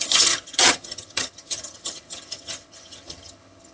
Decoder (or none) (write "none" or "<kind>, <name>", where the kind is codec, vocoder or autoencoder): vocoder, HiFi-GAN